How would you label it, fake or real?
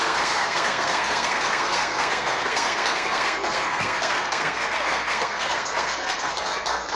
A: fake